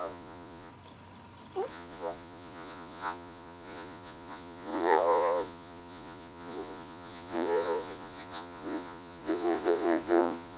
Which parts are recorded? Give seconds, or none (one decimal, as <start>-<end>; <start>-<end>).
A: 0.7-1.7